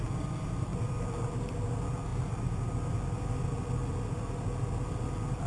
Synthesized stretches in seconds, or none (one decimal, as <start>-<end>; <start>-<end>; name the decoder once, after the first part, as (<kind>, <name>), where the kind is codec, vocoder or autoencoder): none